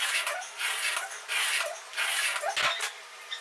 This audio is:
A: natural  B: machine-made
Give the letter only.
A